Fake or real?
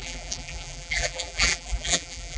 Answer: fake